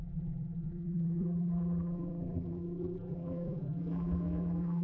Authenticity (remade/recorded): remade